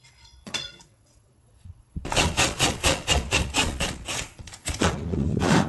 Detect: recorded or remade remade